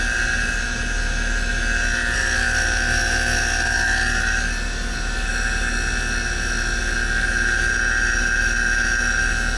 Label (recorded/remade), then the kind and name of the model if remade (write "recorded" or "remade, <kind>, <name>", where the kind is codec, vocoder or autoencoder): recorded